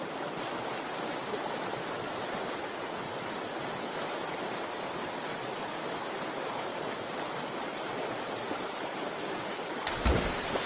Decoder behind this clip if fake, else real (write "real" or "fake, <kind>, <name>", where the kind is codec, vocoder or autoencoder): real